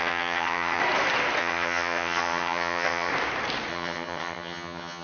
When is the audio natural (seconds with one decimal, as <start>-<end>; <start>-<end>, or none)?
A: 0.8-1.4; 3.1-3.7